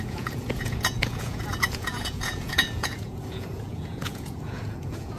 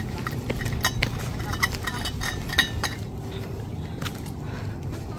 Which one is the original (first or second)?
second